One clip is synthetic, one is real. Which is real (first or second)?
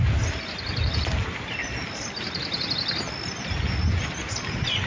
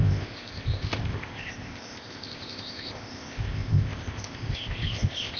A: first